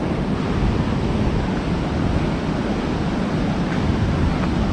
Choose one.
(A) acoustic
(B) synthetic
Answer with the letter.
A